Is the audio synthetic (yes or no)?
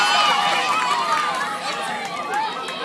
no